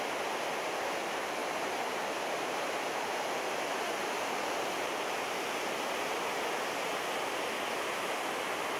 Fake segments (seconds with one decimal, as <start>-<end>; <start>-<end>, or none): 1.4-2.8; 4.0-5.2